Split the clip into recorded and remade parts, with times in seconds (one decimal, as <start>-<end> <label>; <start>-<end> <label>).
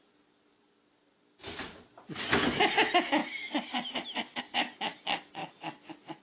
0.0-6.2 recorded